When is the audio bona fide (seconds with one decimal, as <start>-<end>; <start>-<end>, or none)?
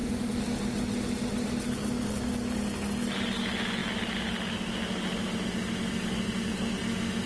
0.0-7.3